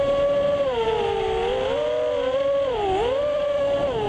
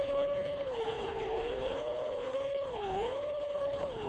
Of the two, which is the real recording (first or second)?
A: first